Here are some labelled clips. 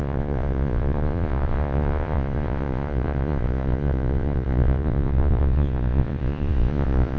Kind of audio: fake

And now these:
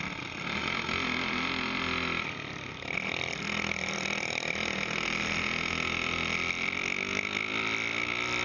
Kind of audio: real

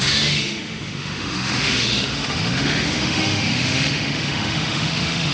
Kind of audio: fake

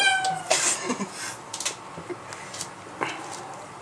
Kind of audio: real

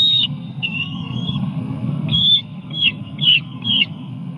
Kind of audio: fake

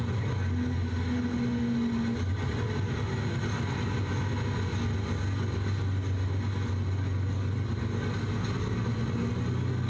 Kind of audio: real